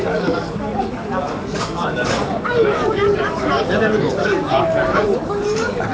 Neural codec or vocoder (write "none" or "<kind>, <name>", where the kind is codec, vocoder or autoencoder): codec, DAC